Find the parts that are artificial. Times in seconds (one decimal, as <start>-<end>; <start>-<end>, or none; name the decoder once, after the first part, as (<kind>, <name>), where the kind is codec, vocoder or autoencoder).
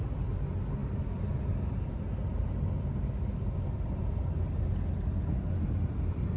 none